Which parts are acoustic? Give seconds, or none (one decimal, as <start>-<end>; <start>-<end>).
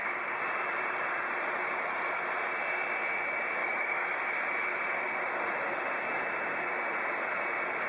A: 0.0-3.6; 4.2-7.9